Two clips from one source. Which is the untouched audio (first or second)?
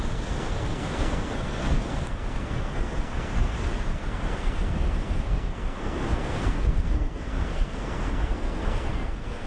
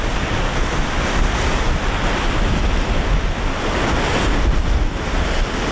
second